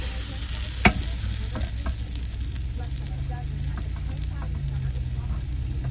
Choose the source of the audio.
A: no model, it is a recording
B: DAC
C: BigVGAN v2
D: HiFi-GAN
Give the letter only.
A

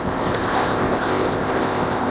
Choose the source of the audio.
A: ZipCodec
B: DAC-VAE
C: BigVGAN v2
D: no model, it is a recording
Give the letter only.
A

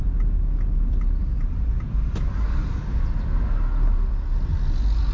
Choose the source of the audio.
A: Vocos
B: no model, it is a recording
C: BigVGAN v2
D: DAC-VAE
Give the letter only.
B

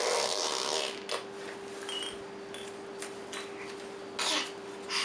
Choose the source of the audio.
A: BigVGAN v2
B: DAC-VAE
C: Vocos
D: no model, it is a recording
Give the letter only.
D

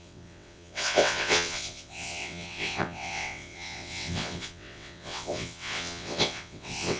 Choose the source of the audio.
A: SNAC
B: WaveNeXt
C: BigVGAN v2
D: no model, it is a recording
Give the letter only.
B